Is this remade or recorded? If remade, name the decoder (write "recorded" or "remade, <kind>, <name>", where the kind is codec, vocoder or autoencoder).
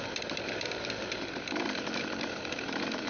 remade, vocoder, BigVGAN v2